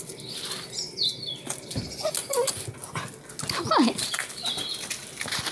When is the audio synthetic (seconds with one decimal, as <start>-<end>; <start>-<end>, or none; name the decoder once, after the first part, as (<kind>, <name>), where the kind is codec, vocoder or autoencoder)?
none